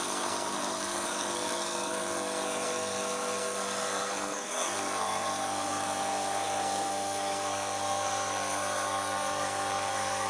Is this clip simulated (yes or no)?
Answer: yes